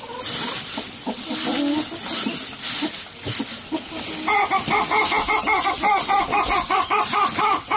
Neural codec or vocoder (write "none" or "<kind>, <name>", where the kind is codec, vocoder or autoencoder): none